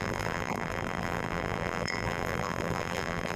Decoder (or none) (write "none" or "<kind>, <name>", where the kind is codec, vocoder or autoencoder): vocoder, BigVGAN v2